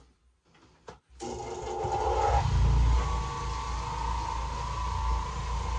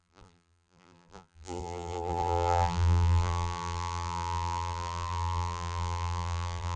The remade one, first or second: second